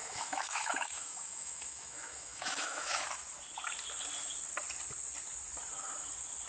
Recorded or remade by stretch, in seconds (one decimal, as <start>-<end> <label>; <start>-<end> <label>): 0.0-3.0 remade; 3.0-6.5 recorded